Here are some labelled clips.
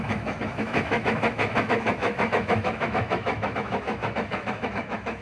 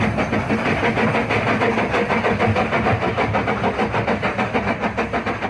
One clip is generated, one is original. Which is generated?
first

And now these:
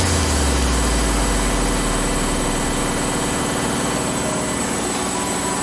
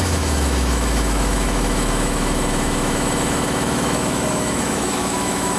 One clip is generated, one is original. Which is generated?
second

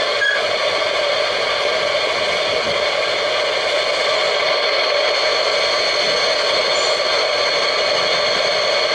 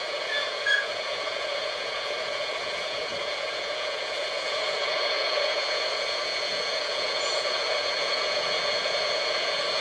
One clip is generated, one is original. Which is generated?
second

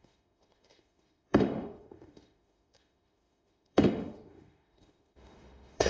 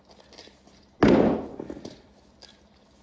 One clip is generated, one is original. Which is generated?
first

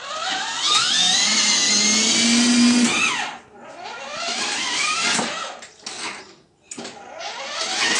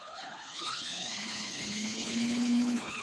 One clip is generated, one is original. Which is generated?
second